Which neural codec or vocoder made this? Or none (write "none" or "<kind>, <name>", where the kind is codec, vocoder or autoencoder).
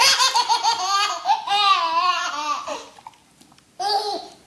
none